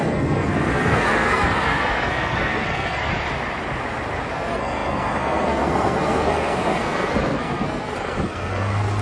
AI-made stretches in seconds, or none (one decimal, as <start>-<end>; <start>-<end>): 0.0-3.1; 4.3-9.0